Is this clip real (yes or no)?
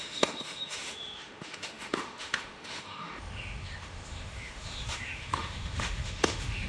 no